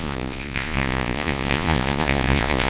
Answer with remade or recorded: remade